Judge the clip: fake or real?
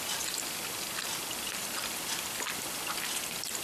real